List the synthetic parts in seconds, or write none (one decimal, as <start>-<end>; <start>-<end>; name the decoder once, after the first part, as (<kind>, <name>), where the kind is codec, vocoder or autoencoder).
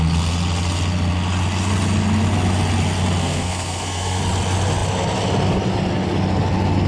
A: 3.2-4.2 (codec, SNAC)